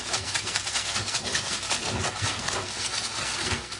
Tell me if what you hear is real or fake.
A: fake